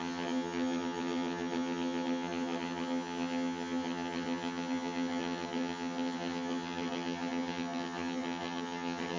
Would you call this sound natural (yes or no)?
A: no